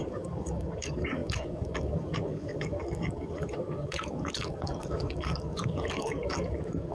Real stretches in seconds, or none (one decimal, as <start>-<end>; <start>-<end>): none